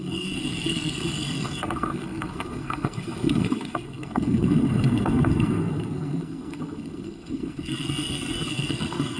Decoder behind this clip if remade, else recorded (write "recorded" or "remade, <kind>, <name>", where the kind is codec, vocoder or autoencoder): remade, codec, SNAC